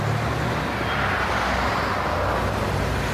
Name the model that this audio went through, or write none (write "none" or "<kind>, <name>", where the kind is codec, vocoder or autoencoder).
none